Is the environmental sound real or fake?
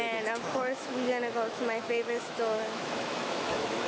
fake